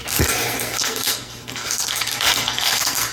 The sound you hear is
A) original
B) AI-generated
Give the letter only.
B